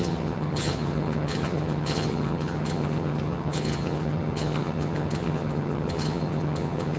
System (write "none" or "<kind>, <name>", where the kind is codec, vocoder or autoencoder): vocoder, HiFi-GAN